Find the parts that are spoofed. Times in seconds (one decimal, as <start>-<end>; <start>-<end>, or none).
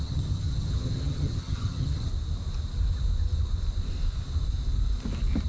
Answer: 0.0-2.1